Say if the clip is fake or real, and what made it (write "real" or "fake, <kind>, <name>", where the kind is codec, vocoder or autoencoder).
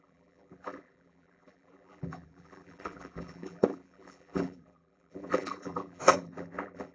fake, vocoder, BigVGAN v2